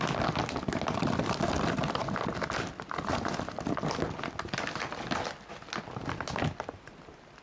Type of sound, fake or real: real